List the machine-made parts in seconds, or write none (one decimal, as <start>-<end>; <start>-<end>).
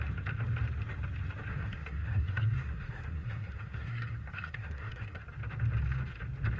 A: 1.5-5.2